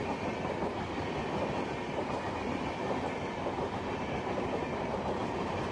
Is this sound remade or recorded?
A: recorded